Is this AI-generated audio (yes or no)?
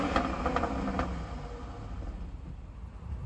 no